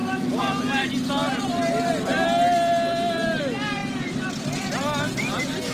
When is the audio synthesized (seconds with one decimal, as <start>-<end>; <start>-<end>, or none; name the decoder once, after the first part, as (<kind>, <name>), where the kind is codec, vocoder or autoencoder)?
none